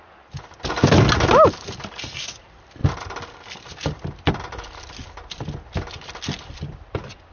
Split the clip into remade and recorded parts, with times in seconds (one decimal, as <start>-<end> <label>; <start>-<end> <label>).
0.0-7.3 recorded